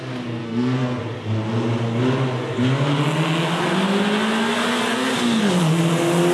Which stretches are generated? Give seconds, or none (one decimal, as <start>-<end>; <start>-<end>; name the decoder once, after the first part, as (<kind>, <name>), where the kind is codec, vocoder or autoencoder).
0.4-1.0 (codec, SNAC)